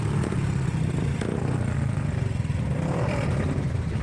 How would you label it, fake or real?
fake